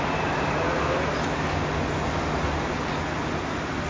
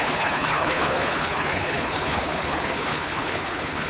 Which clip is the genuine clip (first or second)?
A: first